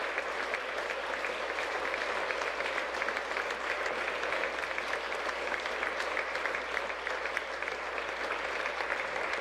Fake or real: real